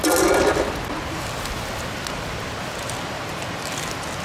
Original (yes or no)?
yes